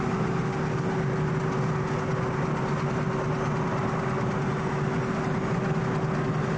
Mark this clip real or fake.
real